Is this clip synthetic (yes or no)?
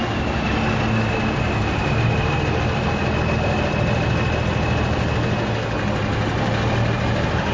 no